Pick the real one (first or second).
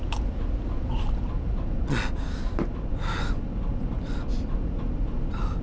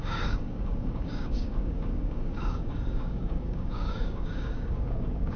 first